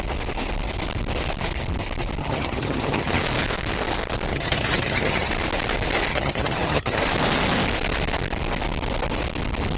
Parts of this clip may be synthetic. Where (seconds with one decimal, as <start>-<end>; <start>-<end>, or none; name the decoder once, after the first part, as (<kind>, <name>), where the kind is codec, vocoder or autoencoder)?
2.2-3.2 (vocoder, HiFi-GAN); 4.3-5.3; 6.1-7.0